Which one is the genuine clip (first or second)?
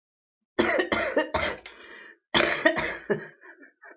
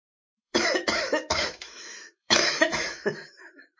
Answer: first